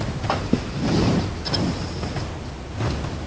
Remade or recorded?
recorded